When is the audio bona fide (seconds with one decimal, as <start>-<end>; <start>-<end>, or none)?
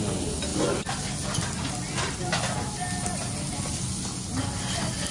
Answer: 0.0-5.1